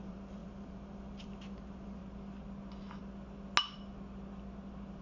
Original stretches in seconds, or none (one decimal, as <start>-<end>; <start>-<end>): 2.0-5.0